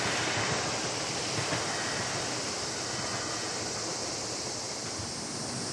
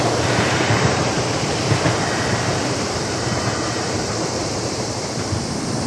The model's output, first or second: second